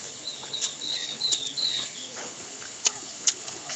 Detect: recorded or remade remade